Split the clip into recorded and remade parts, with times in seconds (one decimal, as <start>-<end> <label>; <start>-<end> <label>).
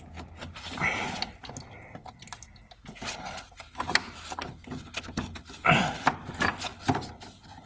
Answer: 0.0-7.7 recorded